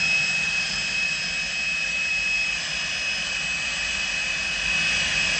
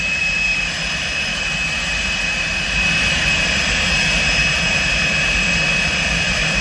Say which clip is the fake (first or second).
second